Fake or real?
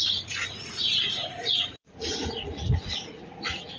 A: fake